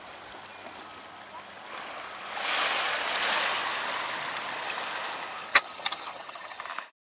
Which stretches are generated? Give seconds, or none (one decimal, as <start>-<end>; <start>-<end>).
5.5-6.6